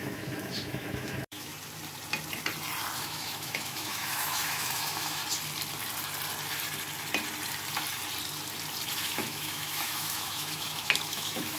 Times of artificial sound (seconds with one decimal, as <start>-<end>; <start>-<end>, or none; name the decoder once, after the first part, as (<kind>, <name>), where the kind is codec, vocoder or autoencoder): 0.0-1.5 (autoencoder, DAC-VAE); 3.0-5.2; 8.9-11.6

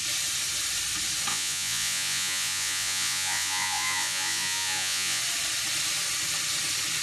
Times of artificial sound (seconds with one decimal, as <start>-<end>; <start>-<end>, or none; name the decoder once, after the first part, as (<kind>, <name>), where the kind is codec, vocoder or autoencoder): 1.3-5.2 (vocoder, Vocos)